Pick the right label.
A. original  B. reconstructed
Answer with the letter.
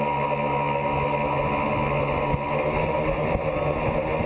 A